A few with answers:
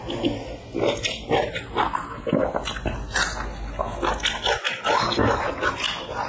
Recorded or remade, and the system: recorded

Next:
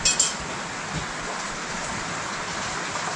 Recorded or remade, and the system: recorded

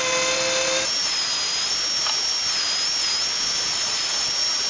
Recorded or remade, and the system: recorded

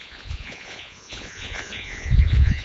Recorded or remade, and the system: remade, vocoder, Vocos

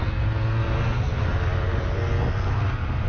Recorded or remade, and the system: recorded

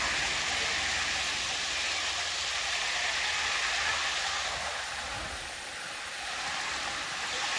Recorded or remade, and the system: recorded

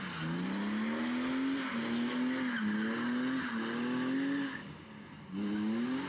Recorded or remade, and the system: recorded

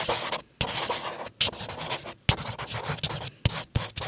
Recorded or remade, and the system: recorded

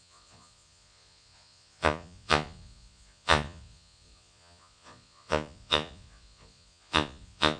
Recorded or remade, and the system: remade, vocoder, Vocos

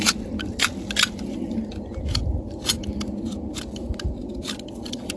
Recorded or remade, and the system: recorded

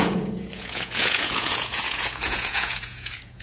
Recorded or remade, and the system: remade, vocoder, Vocos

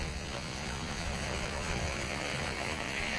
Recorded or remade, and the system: remade, vocoder, Vocos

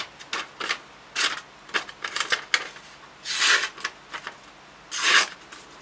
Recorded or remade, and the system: recorded